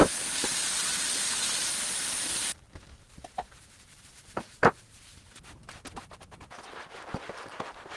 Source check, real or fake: fake